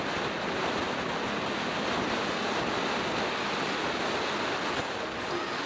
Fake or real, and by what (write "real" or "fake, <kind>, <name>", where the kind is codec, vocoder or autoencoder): real